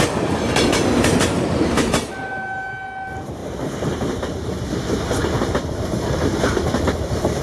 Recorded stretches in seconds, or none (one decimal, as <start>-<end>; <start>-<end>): 0.0-7.4